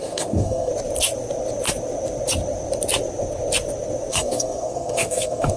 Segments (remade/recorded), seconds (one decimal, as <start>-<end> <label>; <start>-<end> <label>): 0.0-0.7 remade; 0.7-4.1 recorded; 4.1-5.6 remade